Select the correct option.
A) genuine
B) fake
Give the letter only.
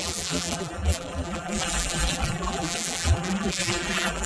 B